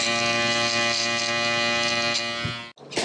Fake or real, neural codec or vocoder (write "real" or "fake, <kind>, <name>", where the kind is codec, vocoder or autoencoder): real